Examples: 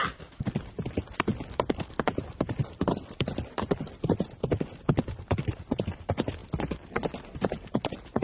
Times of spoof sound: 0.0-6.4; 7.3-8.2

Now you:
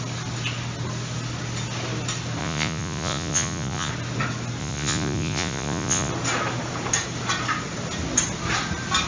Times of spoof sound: 2.4-3.9; 4.6-6.1

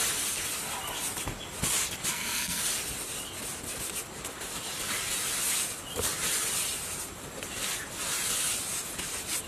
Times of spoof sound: 2.1-2.6

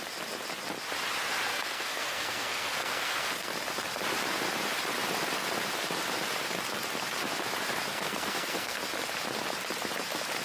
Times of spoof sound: 1.5-3.5; 7.9-8.8